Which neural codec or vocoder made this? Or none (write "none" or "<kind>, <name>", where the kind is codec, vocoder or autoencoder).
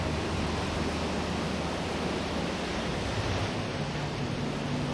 none